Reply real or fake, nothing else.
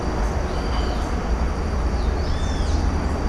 real